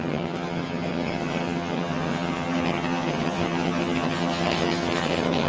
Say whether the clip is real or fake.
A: fake